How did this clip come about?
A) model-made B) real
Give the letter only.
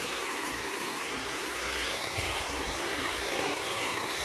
A